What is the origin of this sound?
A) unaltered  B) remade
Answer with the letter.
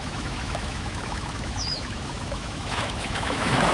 B